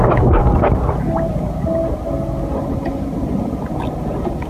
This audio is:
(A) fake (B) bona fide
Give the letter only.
B